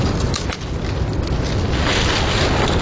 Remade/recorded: recorded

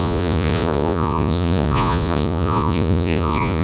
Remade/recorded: remade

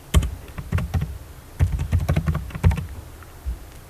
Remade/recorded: recorded